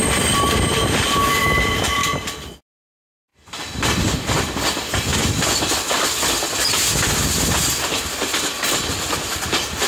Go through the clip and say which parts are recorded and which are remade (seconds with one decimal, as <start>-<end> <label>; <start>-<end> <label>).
0.0-2.0 remade; 2.0-2.9 recorded; 2.9-3.3 remade; 3.3-4.0 recorded; 4.0-9.9 remade